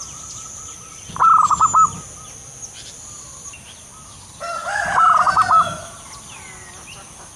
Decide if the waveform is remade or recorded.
recorded